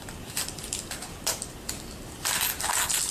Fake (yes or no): no